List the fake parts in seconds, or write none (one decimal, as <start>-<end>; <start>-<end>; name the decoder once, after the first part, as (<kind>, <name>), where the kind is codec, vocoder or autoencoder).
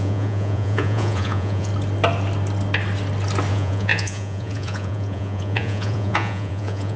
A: 0.0-1.7 (vocoder, Vocos); 3.5-7.0